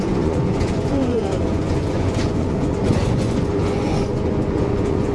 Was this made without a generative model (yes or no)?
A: no